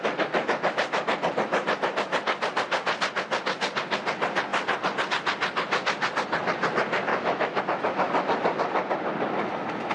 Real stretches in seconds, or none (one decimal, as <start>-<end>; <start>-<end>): 0.0-7.1; 7.6-9.9